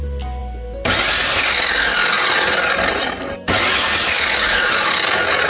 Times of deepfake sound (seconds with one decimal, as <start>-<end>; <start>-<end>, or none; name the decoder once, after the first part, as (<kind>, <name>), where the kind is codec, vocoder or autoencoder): none